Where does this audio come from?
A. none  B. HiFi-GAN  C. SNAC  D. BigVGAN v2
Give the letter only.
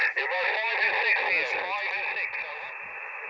A